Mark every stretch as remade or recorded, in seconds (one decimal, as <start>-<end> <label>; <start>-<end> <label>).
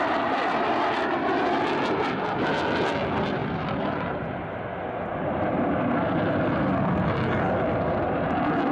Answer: 0.0-8.7 recorded